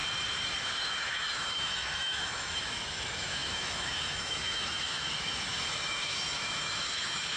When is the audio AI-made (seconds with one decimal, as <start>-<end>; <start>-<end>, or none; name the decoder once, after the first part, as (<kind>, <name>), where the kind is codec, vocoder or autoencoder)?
0.6-7.4 (autoencoder, DAC-VAE)